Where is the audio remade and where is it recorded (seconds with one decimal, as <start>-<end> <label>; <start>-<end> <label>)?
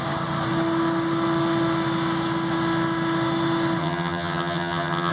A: 0.0-3.8 recorded; 3.8-5.1 remade